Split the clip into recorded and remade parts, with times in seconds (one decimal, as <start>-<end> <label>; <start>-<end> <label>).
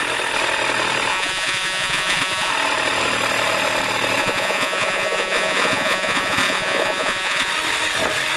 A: 0.0-1.1 recorded; 1.1-2.5 remade; 2.5-4.2 recorded; 4.2-7.5 remade; 7.5-8.4 recorded